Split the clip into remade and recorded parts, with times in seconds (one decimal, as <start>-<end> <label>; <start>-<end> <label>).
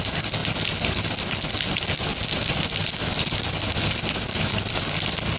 0.0-2.1 recorded; 2.1-5.4 remade